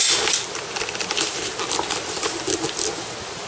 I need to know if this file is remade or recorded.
recorded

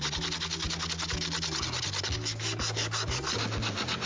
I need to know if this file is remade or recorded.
recorded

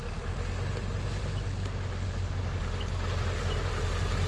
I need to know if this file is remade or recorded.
recorded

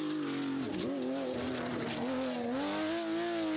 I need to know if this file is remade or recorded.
recorded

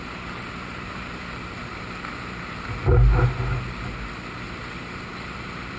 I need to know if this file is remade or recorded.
recorded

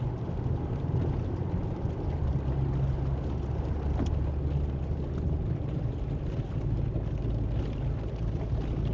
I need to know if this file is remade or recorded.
recorded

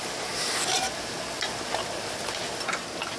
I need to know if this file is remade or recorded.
recorded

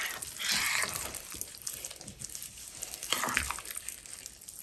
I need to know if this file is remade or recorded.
recorded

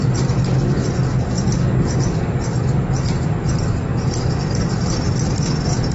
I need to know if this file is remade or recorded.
recorded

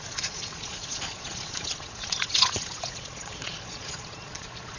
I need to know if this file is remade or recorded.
remade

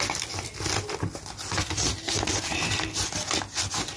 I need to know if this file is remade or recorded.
recorded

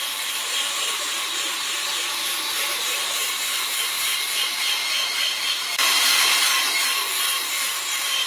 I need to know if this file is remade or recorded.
remade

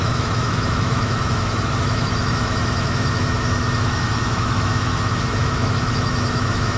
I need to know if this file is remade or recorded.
remade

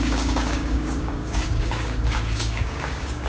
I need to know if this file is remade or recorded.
remade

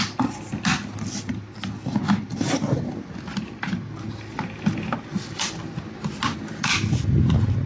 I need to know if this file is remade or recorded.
recorded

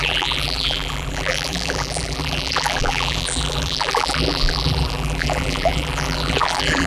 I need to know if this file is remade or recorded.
remade